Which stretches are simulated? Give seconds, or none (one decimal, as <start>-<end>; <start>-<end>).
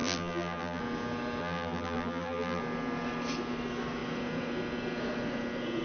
0.0-0.8; 1.4-2.6